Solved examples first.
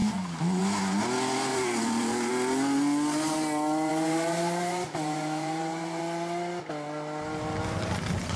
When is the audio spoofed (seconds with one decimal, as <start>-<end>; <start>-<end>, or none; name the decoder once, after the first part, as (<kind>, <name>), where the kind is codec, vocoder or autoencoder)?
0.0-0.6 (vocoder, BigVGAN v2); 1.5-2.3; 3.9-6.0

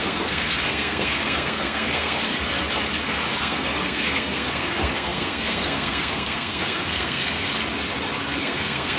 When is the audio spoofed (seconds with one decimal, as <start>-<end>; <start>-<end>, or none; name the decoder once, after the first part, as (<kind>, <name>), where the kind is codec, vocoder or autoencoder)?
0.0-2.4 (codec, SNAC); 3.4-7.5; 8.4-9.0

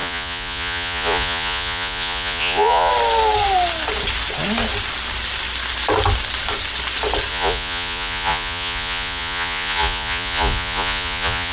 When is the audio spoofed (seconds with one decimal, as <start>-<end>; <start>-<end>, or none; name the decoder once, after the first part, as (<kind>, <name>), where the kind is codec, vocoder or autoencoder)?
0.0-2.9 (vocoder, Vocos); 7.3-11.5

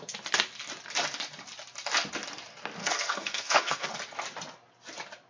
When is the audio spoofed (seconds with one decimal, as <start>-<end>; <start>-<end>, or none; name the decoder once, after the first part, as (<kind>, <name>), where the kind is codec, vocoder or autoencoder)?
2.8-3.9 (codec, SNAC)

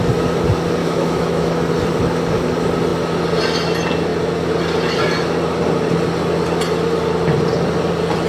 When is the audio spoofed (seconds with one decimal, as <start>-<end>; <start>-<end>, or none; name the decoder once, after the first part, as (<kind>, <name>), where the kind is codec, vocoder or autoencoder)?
0.8-1.7 (autoencoder, DAC-VAE)

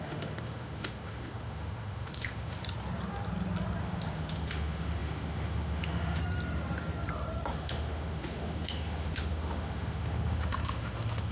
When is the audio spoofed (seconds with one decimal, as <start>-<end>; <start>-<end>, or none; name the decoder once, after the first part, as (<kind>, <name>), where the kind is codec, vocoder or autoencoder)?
0.0-2.6 (autoencoder, DAC-VAE); 3.8-6.2; 7.5-11.3